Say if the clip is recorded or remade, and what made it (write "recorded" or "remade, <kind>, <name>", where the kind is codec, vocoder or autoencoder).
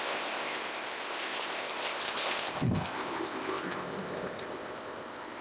remade, codec, ZipCodec